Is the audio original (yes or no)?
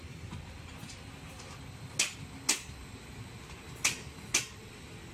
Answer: yes